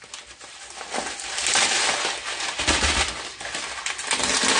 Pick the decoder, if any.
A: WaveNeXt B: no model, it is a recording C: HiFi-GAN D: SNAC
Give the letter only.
B